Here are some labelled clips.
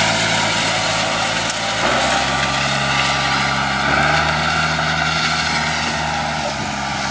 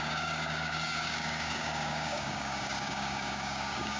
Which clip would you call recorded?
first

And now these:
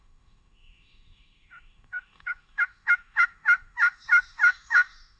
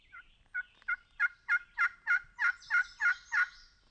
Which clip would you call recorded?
second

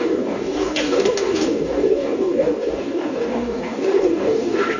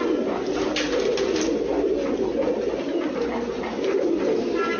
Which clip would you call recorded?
second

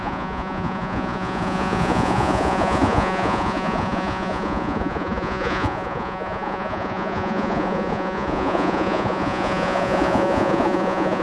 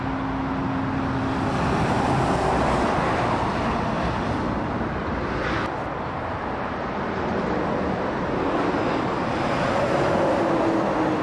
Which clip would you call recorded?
second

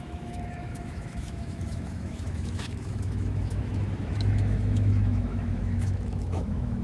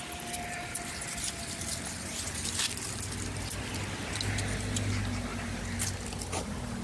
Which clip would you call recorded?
second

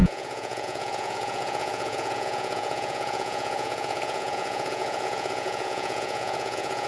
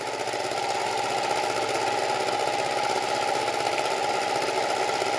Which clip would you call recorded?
second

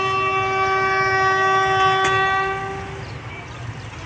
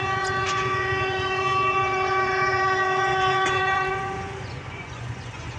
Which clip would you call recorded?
first